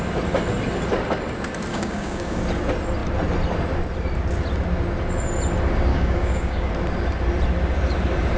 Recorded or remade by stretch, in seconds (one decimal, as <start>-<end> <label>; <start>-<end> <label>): 0.0-1.7 recorded; 1.7-2.4 remade; 2.4-5.9 recorded; 5.9-6.7 remade; 6.7-8.4 recorded